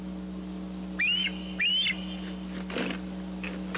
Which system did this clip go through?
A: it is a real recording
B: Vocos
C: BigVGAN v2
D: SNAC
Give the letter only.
A